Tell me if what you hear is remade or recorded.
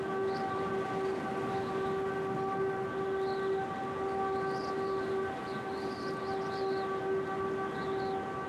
recorded